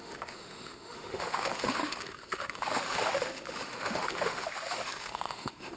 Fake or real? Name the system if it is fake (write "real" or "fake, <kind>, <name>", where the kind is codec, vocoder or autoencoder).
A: fake, autoencoder, DAC-VAE